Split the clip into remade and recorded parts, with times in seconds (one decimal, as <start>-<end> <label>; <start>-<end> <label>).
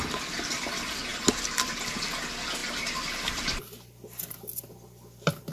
0.0-5.5 recorded